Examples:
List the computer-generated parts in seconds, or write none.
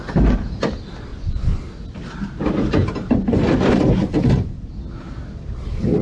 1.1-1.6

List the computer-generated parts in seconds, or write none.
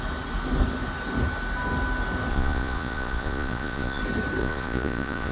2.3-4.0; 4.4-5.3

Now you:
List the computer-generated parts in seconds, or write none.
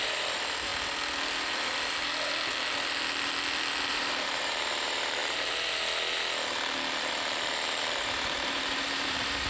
0.0-0.7; 3.9-5.2; 7.9-9.5